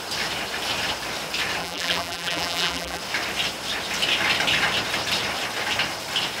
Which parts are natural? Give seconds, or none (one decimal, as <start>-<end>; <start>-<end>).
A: 0.0-1.6; 3.0-6.4